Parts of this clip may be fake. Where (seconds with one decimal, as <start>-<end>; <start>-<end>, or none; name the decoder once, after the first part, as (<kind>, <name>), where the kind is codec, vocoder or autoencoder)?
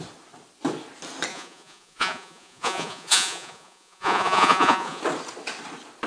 1.3-5.0 (vocoder, Vocos)